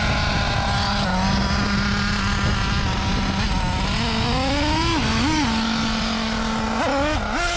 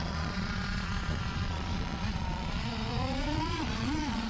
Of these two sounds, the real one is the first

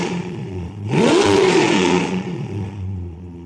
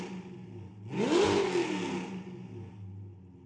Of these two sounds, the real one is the second